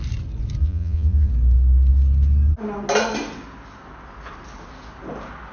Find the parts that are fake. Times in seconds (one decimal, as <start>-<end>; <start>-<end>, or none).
0.6-1.3